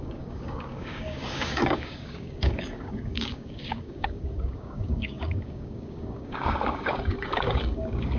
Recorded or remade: remade